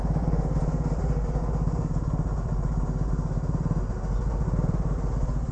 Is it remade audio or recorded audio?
recorded